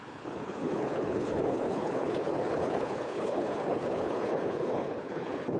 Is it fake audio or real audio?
fake